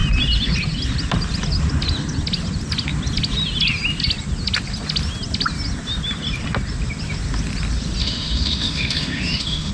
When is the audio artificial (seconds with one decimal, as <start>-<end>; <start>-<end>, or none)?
8.0-9.7